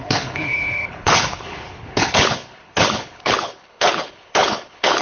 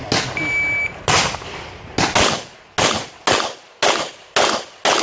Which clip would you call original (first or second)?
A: second